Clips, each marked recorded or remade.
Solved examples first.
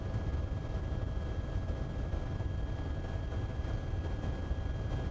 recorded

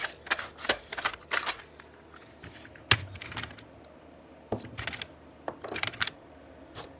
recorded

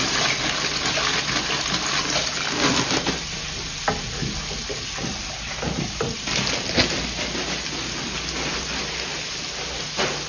recorded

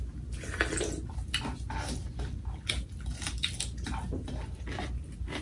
recorded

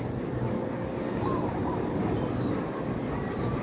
recorded